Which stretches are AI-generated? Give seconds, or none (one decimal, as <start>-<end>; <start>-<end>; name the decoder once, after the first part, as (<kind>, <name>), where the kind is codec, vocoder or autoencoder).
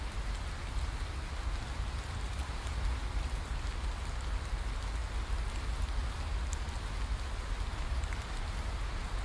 2.4-3.0 (vocoder, BigVGAN v2); 7.7-8.3